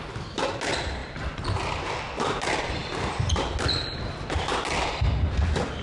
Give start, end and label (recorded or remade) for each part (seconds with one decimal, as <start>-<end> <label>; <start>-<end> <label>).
0.0-1.0 recorded; 1.0-1.9 remade; 1.9-2.8 recorded; 2.8-3.4 remade; 3.4-5.8 recorded